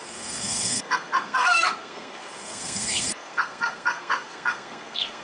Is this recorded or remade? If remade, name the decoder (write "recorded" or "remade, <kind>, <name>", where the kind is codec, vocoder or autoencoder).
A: remade, codec, SNAC